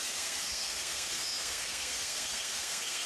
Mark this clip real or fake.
fake